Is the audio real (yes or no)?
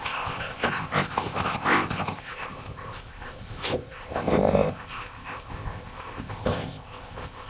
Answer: no